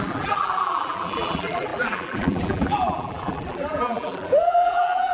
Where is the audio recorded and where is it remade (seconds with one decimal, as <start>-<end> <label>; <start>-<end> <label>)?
0.0-5.1 remade